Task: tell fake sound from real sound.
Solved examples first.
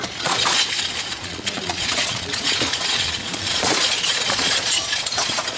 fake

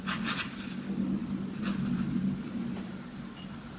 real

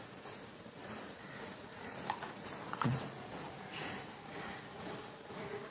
fake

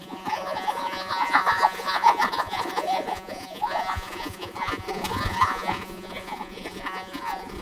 fake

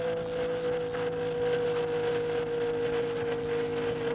real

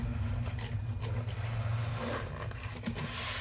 real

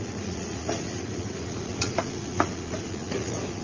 fake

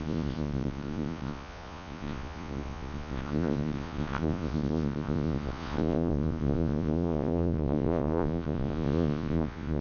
fake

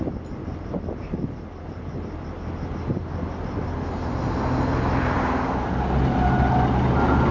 real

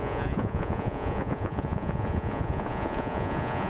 fake